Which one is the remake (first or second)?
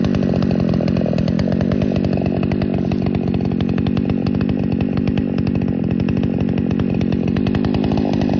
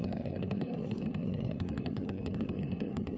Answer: second